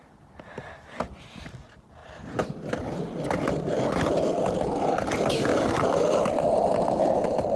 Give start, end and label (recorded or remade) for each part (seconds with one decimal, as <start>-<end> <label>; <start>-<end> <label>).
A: 0.0-7.6 recorded